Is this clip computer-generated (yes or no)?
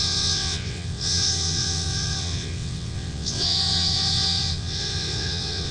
yes